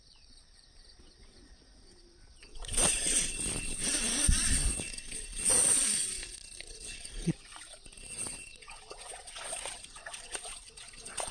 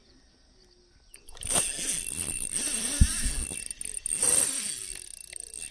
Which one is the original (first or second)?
second